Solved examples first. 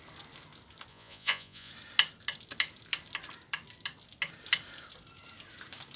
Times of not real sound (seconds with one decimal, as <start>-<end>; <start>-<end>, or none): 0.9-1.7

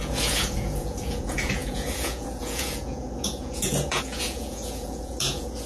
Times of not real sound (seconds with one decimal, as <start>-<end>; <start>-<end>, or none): 0.0-5.7

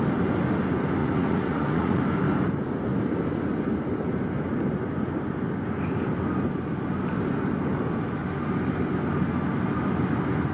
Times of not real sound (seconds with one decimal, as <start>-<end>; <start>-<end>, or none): 1.0-2.0